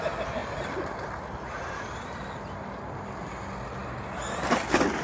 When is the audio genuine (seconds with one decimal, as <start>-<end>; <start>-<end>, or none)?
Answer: 0.0-5.0